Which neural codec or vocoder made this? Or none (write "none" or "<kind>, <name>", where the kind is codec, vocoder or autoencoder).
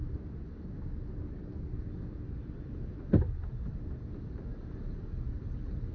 none